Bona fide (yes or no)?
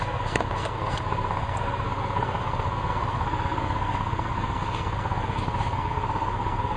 no